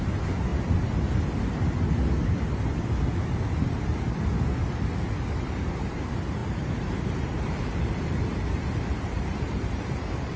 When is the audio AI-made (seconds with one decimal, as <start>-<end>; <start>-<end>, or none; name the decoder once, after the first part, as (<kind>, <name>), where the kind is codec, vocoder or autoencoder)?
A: 0.0-0.5 (vocoder, BigVGAN v2); 2.7-3.9; 5.3-10.4